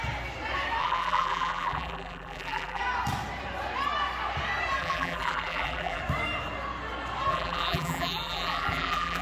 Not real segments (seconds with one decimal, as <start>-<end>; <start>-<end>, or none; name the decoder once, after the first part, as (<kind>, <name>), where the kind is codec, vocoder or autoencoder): 0.8-2.8 (vocoder, BigVGAN v2); 4.8-6.0; 7.3-9.2